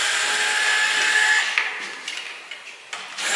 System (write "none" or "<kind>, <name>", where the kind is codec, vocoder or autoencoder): none